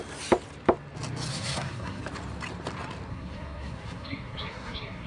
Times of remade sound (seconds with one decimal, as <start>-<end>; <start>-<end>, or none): 1.3-2.0; 3.1-5.1